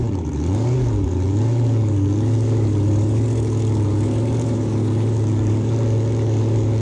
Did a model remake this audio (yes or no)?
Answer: yes